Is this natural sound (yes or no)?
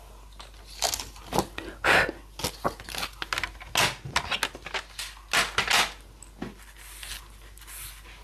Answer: yes